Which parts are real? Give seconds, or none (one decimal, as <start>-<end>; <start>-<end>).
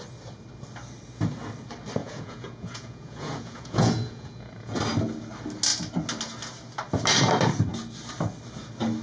0.0-2.0; 4.8-9.0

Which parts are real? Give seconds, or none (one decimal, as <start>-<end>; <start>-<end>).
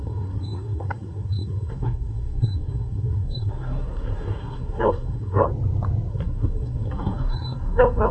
5.5-6.1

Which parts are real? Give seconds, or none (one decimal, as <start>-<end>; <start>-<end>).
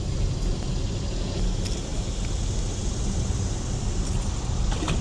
0.0-5.0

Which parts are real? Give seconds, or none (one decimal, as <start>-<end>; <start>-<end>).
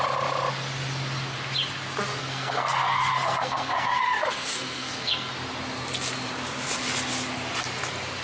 0.0-2.2; 5.3-8.2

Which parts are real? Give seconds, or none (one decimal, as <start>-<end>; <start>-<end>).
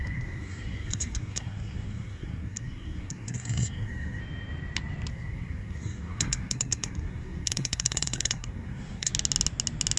4.2-5.1; 9.1-10.0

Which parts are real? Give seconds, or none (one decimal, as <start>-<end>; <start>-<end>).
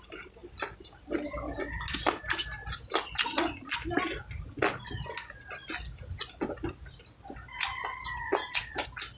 0.0-9.2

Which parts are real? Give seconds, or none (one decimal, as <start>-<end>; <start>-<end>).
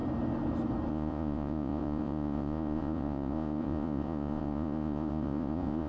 0.0-0.9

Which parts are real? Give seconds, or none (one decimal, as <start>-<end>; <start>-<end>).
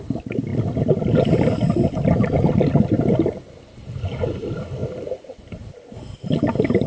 0.0-6.9